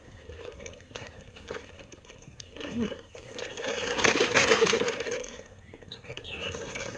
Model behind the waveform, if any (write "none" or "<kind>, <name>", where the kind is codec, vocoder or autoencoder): codec, SNAC